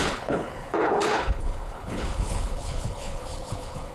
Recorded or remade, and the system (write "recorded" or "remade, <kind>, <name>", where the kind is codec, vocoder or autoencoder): remade, codec, HILCodec